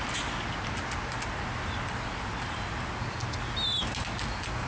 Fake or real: real